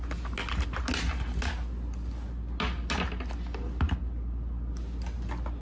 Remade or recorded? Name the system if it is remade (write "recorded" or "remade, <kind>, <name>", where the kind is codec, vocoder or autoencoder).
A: recorded